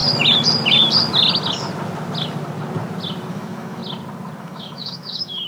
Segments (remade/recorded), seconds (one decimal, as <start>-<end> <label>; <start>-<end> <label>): 0.0-3.3 recorded; 3.3-3.8 remade; 3.8-4.4 recorded; 4.4-5.5 remade